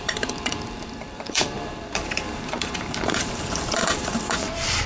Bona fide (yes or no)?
no